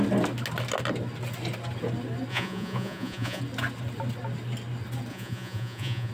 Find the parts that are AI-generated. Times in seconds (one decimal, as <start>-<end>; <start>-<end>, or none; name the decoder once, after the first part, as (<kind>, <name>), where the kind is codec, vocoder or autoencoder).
2.3-3.4 (vocoder, Vocos); 5.1-6.1